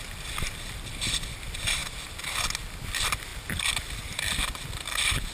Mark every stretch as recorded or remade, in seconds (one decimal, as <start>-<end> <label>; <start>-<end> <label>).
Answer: 0.0-5.3 recorded